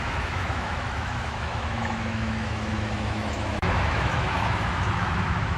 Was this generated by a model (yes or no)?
yes